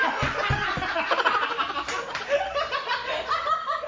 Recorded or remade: recorded